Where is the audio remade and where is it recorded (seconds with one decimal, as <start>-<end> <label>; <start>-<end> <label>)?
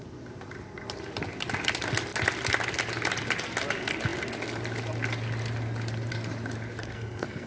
0.0-6.8 recorded; 6.8-7.5 remade